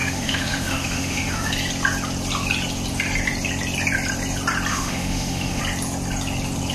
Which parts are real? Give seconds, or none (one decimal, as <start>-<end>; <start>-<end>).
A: 1.5-4.7; 5.6-6.7